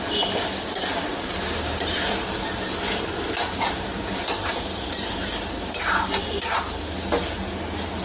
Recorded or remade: remade